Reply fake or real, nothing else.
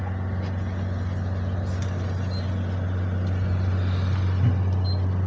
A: real